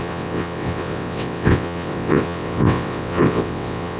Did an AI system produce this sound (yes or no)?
yes